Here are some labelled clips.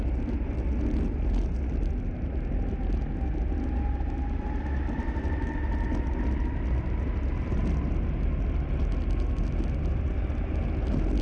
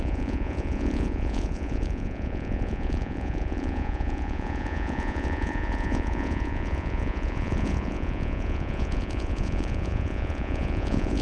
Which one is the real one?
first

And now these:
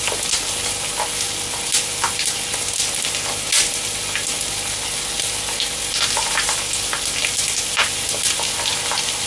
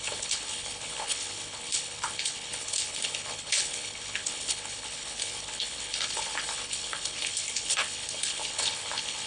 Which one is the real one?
first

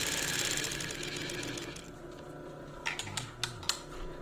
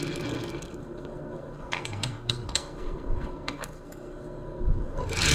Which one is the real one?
first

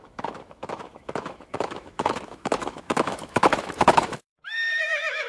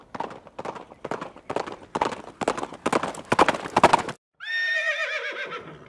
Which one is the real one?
second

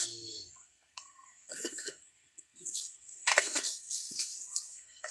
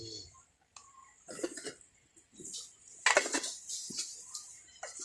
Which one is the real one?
second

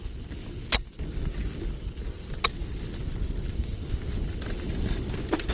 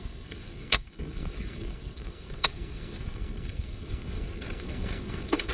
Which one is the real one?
first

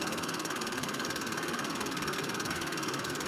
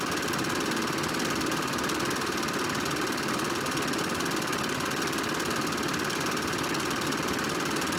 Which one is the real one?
second